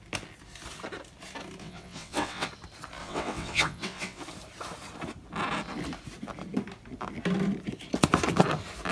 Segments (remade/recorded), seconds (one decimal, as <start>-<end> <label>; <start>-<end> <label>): 0.0-1.6 recorded; 1.6-2.5 remade; 2.5-3.0 recorded; 3.0-4.2 remade; 4.2-8.9 recorded